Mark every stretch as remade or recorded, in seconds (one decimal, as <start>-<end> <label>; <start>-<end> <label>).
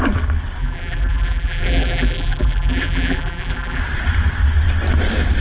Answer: 0.0-0.6 recorded; 0.6-3.8 remade; 3.8-5.4 recorded